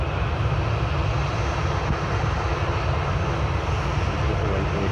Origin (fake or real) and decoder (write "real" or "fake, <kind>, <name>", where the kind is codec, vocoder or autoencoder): real